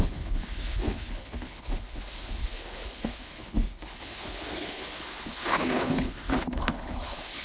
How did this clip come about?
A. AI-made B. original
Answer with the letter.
A